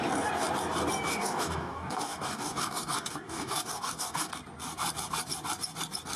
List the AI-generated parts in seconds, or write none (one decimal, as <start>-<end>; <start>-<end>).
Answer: 1.1-4.3